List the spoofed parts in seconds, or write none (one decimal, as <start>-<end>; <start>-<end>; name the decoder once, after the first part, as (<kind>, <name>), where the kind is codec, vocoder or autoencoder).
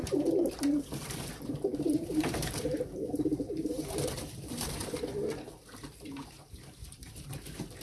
0.0-4.8 (vocoder, BigVGAN v2); 5.8-7.8